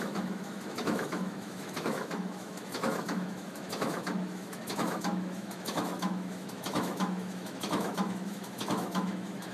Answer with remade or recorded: remade